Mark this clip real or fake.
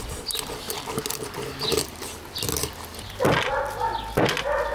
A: real